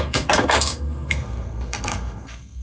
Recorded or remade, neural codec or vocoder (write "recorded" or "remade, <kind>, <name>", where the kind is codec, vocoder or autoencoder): remade, codec, SNAC